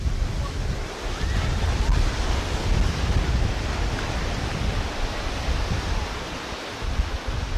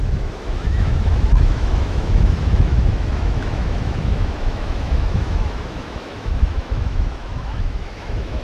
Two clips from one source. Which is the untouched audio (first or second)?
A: first